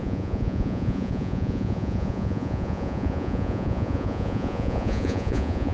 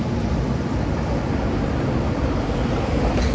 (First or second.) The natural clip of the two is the second